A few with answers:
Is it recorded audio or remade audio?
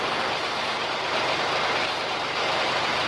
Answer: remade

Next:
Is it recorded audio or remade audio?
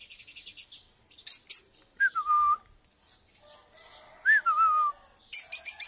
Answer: recorded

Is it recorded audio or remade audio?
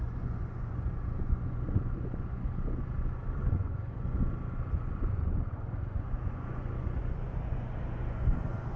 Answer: remade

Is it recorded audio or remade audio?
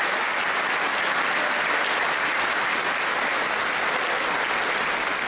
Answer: recorded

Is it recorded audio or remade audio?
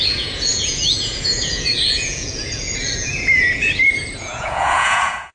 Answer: remade